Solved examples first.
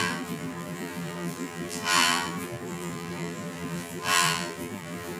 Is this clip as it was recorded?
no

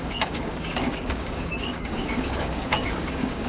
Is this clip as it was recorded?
no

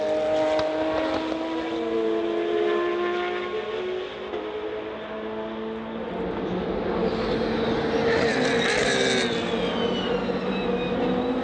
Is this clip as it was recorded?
yes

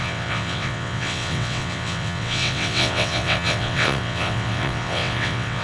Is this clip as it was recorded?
no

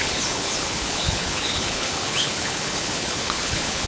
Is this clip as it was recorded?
no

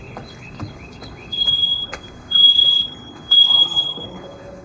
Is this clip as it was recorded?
no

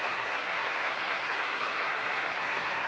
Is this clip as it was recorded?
no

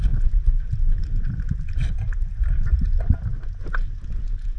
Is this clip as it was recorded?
yes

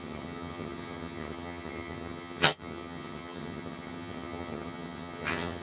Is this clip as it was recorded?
no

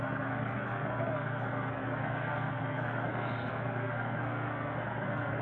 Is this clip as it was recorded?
no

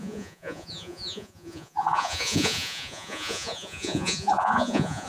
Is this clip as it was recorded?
no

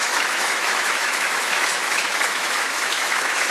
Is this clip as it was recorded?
no